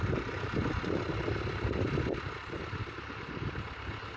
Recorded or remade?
recorded